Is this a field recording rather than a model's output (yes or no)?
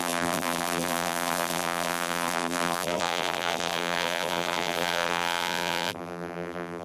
no